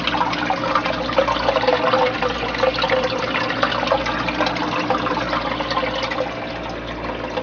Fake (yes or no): no